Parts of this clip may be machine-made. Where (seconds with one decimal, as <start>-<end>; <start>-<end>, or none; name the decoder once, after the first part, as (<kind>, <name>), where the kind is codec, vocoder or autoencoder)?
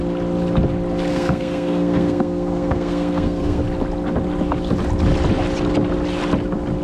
1.1-3.6 (codec, SNAC)